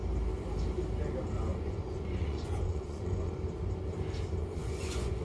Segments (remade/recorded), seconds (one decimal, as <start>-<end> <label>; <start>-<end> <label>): 0.0-1.5 recorded; 1.5-3.3 remade; 3.3-4.4 recorded; 4.4-5.2 remade